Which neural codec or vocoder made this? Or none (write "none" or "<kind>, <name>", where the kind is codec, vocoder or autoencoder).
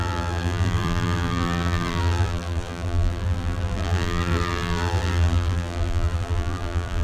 vocoder, BigVGAN v2